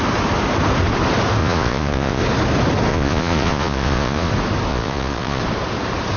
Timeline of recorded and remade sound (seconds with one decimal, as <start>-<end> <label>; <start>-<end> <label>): 0.0-1.4 recorded; 1.4-2.2 remade; 2.2-2.9 recorded; 2.9-4.3 remade; 4.3-4.7 recorded; 4.7-5.4 remade; 5.4-6.2 recorded